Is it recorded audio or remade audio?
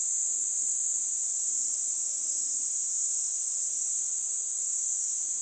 recorded